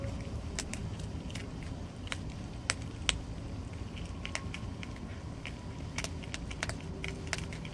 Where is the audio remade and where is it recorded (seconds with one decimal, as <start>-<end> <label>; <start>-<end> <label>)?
0.0-7.7 recorded